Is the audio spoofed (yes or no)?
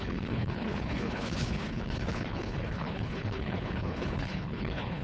yes